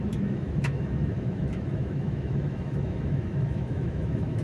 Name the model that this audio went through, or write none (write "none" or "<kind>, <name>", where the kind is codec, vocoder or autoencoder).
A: autoencoder, DAC-VAE